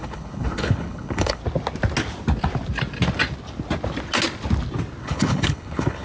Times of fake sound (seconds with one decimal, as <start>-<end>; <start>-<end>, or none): 0.0-1.4; 5.0-6.0